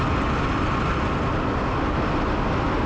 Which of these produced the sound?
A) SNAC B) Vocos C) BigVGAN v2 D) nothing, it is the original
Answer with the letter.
D